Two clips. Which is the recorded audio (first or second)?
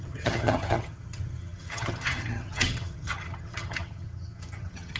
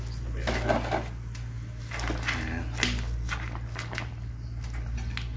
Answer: second